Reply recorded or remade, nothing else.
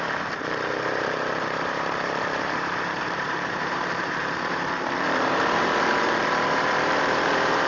remade